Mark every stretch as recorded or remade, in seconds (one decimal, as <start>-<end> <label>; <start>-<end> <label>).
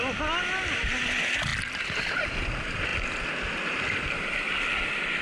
0.0-5.2 recorded